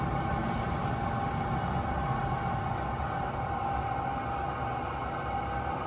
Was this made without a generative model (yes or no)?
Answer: yes